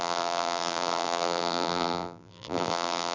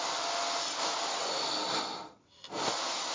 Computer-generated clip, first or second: first